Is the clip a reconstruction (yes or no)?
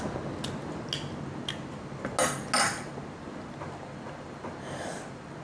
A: no